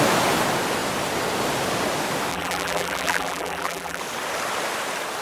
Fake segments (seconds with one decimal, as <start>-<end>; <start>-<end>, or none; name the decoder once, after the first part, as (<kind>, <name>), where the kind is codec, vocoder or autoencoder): 2.3-4.0 (vocoder, BigVGAN v2)